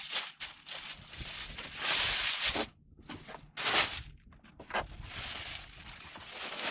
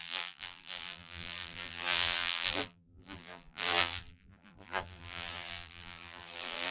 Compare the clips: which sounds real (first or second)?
first